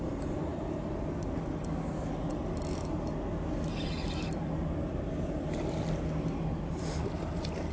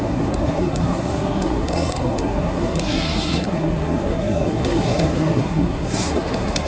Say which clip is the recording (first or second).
first